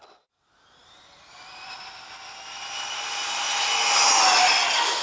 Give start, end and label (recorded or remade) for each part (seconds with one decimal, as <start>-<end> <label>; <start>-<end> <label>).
0.0-5.0 recorded